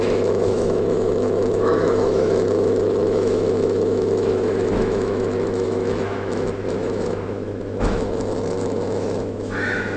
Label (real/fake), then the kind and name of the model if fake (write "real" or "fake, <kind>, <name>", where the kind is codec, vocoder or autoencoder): fake, autoencoder, DAC-VAE